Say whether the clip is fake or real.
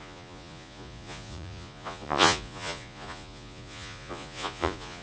fake